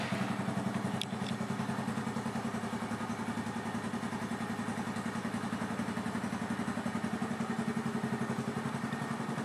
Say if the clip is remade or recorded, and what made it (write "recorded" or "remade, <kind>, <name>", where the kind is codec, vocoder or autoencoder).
recorded